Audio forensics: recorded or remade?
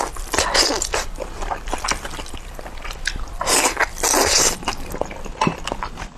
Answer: recorded